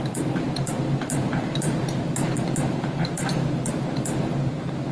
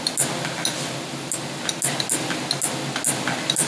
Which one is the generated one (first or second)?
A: first